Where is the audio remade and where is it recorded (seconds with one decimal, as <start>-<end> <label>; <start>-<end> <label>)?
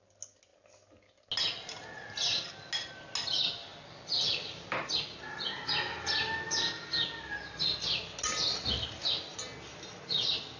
0.0-10.6 recorded